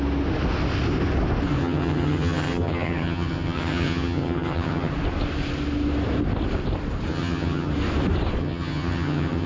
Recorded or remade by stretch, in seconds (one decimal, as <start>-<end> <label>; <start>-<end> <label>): 0.0-1.6 recorded; 1.6-4.9 remade; 4.9-7.1 recorded; 7.1-7.7 remade; 7.7-8.4 recorded; 8.4-9.5 remade

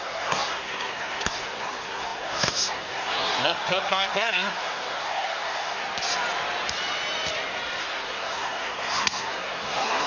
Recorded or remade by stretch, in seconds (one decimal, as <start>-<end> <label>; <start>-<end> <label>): 0.0-5.8 remade; 5.8-7.8 recorded; 7.8-10.1 remade

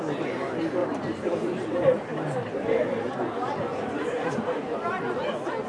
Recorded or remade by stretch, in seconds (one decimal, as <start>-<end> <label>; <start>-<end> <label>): 0.0-0.8 recorded; 0.8-1.6 remade; 1.6-3.7 recorded; 3.7-5.0 remade; 5.0-5.7 recorded

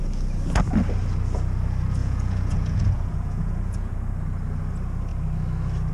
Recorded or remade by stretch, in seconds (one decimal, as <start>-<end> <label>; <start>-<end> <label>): 0.0-2.0 recorded; 2.0-3.9 remade; 3.9-5.9 recorded

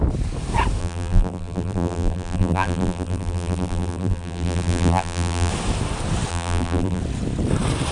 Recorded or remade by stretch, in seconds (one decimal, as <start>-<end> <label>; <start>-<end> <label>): 0.0-0.8 recorded; 0.8-5.5 remade; 5.5-6.3 recorded; 6.3-7.0 remade; 7.0-7.9 recorded